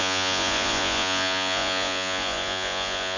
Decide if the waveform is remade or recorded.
remade